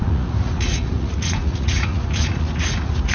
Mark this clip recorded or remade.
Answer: remade